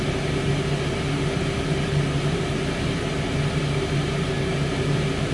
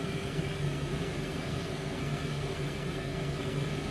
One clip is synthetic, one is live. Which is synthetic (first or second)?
second